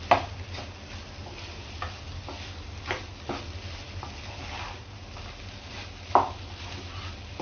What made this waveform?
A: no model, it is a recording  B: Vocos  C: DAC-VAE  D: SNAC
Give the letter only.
A